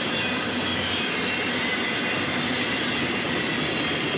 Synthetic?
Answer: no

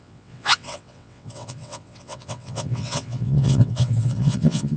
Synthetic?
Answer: yes